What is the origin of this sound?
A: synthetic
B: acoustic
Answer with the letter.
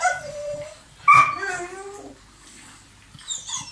B